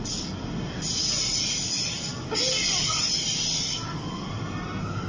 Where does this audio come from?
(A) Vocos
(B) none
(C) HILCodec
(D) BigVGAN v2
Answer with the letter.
B